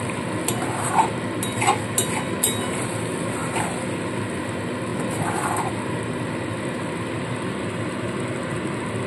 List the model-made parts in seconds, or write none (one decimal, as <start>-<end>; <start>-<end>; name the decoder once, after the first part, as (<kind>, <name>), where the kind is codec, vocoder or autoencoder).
none